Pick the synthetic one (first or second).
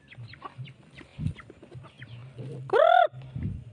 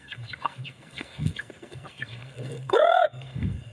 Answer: second